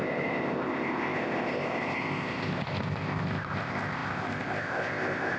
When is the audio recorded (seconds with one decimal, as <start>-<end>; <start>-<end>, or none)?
none